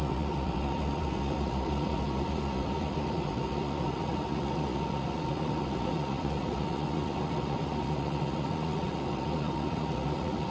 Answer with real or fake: fake